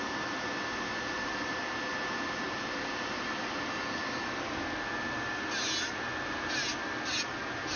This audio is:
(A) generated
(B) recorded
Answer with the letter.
B